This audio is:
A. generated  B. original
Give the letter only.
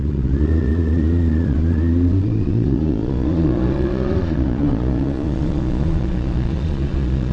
A